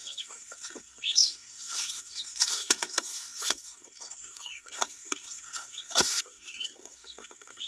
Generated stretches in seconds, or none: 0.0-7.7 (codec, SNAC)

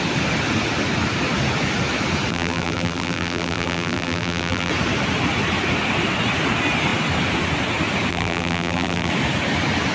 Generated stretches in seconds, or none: 2.3-4.7 (vocoder, BigVGAN v2); 8.1-9.1

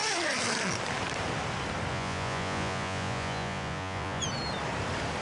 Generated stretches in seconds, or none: 1.9-4.2 (vocoder, Vocos)

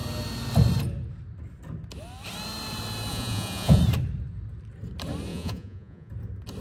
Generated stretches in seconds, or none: 3.1-3.8 (vocoder, Vocos); 5.3-6.1

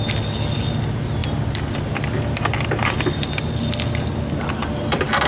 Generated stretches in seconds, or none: none

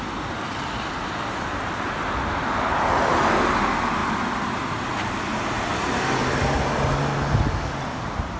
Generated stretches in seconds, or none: none